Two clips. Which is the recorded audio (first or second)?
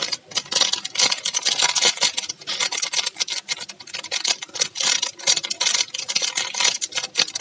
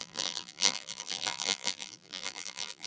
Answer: first